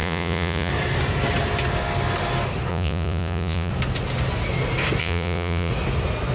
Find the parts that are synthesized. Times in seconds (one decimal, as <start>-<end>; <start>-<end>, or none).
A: 0.0-0.7; 2.7-3.7; 5.0-5.7